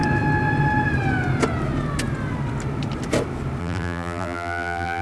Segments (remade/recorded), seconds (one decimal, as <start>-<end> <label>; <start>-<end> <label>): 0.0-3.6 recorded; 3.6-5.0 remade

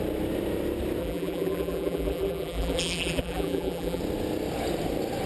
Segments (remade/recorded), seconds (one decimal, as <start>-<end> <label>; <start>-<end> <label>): 0.0-1.0 recorded; 1.0-4.0 remade; 4.0-5.3 recorded

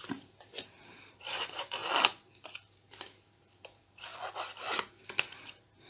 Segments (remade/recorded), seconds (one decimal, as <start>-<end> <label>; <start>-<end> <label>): 0.0-1.8 remade; 1.8-2.4 recorded; 2.4-4.1 remade; 4.1-5.2 recorded; 5.2-5.9 remade

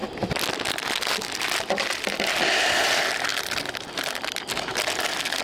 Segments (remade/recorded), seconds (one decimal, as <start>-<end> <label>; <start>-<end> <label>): 0.0-5.4 recorded

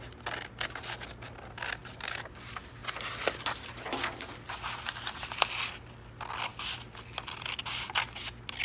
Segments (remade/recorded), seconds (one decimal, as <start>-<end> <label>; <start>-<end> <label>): 0.0-1.8 recorded; 1.8-2.3 remade; 2.3-8.6 recorded